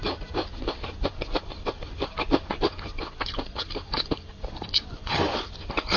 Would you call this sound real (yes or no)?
no